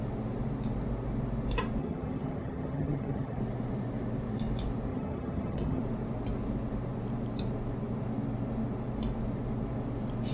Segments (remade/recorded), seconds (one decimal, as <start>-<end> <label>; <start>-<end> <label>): 0.0-1.8 recorded; 1.8-3.4 remade; 3.4-4.9 recorded; 4.9-5.8 remade; 5.8-10.3 recorded